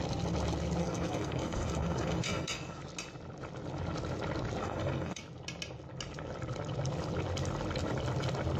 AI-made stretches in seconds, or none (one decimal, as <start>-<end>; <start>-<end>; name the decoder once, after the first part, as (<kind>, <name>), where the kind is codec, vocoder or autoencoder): 0.8-2.8 (codec, SNAC); 4.6-5.2